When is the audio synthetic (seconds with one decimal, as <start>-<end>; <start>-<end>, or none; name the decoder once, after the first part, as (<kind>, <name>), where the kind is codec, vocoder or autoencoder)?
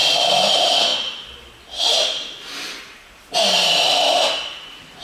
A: 0.5-0.9 (vocoder, BigVGAN v2); 3.9-5.0